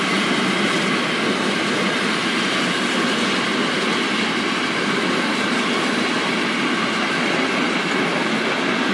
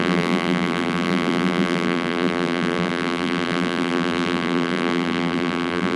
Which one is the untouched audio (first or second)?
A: first